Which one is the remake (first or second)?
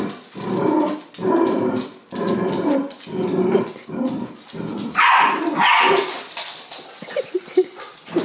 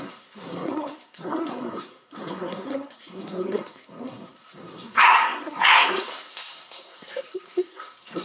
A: second